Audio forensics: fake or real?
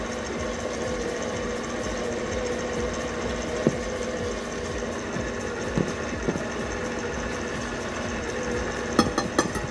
real